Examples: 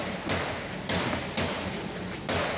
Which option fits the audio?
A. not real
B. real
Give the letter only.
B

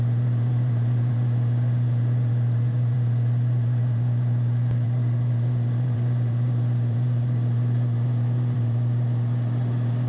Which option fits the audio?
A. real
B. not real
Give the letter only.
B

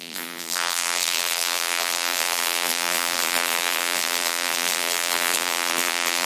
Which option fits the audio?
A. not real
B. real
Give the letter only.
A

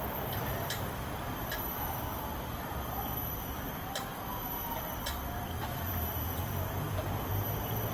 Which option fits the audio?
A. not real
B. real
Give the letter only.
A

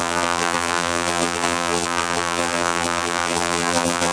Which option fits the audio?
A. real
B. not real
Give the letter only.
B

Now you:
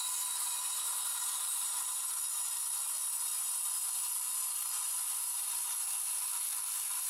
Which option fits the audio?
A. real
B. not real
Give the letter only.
A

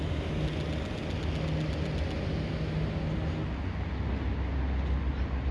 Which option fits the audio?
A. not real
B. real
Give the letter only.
B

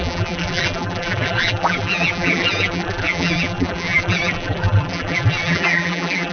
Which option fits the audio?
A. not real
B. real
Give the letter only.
A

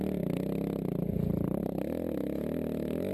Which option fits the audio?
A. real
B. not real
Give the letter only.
A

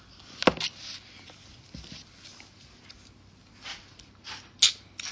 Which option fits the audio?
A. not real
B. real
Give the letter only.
B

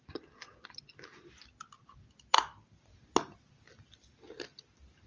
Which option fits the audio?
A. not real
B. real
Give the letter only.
B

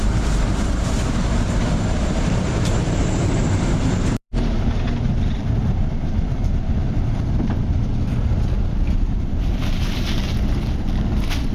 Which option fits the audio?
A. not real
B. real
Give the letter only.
A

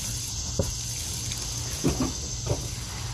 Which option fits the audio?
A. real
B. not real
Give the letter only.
A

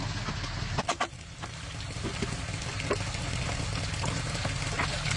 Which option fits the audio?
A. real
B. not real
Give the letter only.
A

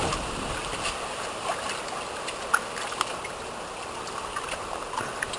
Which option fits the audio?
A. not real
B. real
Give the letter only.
B